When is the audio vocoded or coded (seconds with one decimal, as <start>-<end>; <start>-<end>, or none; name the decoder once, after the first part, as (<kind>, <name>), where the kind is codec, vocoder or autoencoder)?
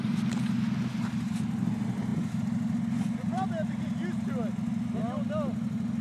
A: none